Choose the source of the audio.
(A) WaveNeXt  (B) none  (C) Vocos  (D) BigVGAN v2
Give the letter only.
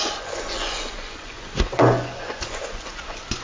C